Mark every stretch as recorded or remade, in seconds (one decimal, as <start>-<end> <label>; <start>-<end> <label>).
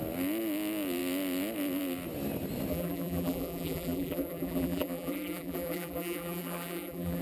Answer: 0.0-2.7 recorded; 2.7-7.2 remade